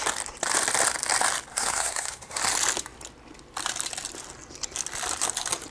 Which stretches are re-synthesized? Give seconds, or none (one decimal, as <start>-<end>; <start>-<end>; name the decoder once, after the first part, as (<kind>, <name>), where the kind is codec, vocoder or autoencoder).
1.5-2.4 (codec, SNAC)